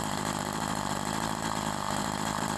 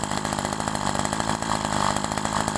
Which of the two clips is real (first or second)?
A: second